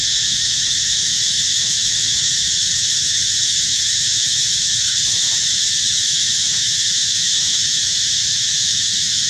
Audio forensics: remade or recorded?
remade